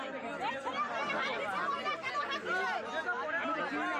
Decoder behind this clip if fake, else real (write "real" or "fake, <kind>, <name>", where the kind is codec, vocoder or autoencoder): real